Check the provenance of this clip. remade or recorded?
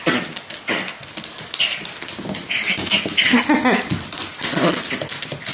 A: recorded